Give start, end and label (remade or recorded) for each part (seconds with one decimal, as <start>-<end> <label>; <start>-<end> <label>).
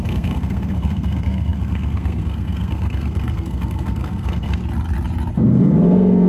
0.0-4.6 remade; 4.6-5.3 recorded; 5.3-6.3 remade